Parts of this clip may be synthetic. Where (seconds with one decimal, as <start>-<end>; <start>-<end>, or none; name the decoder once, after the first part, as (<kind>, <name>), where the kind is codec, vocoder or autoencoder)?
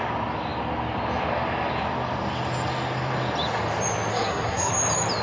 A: 4.1-4.7 (codec, SNAC)